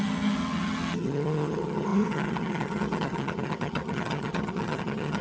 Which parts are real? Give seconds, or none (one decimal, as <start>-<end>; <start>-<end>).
none

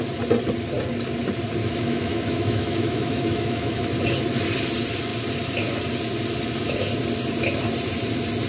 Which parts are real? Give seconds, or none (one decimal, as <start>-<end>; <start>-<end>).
0.0-1.6; 3.8-8.5

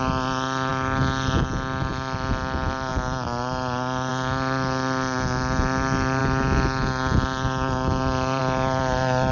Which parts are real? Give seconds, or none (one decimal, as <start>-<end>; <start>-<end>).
0.0-9.3